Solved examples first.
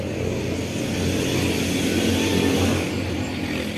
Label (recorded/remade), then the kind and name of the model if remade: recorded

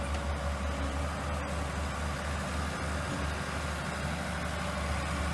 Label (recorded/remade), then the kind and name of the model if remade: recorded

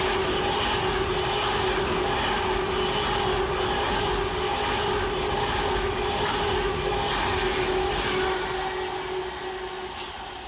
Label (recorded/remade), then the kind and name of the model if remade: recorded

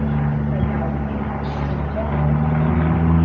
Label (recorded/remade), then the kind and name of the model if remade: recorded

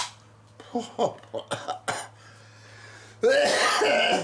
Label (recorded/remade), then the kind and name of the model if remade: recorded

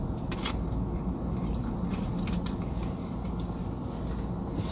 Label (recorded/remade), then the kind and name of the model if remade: recorded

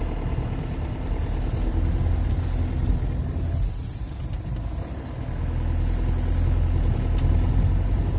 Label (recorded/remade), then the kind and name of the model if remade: recorded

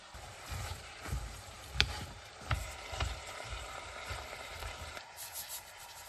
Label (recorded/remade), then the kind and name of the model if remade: remade, vocoder, BigVGAN v2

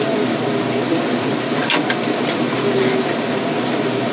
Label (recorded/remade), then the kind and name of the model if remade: remade, vocoder, BigVGAN v2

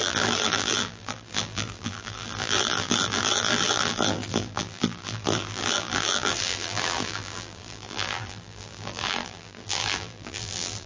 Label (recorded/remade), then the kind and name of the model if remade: remade, vocoder, BigVGAN v2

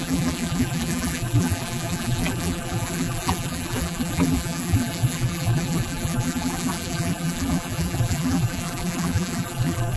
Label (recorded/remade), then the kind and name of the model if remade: remade, vocoder, BigVGAN v2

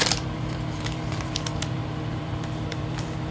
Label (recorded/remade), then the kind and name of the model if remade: remade, vocoder, BigVGAN v2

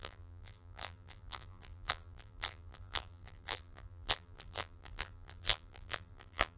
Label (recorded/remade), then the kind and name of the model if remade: remade, vocoder, BigVGAN v2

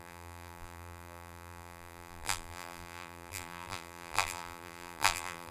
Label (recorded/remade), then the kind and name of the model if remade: remade, vocoder, BigVGAN v2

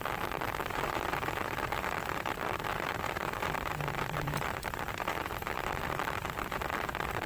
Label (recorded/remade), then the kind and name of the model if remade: remade, vocoder, BigVGAN v2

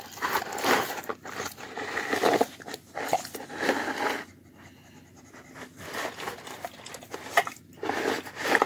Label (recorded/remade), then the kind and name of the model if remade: recorded